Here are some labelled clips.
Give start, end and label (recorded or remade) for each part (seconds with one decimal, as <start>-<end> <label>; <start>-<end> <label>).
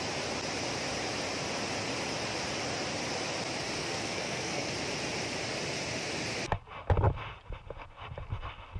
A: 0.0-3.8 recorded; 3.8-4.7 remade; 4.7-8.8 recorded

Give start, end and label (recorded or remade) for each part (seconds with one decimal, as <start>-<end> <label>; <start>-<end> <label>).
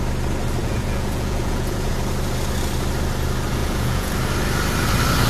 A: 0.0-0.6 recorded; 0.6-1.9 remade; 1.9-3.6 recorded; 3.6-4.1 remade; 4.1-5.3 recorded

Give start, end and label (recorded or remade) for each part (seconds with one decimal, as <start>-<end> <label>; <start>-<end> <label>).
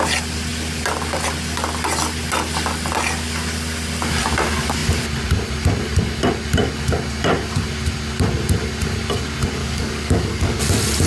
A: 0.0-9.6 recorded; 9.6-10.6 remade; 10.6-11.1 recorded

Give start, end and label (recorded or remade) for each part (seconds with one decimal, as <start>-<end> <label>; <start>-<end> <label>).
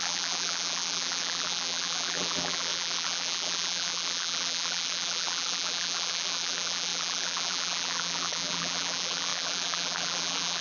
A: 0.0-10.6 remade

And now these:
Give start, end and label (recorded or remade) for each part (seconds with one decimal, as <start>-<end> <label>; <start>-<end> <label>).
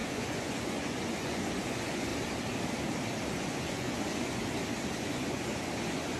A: 0.0-2.1 remade; 2.1-3.3 recorded; 3.3-4.4 remade; 4.4-4.9 recorded; 4.9-6.2 remade